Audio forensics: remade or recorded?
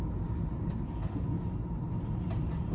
recorded